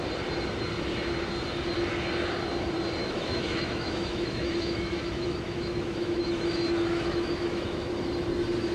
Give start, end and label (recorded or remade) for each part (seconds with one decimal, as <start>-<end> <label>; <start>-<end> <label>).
0.0-3.0 recorded; 3.0-7.9 remade; 7.9-8.7 recorded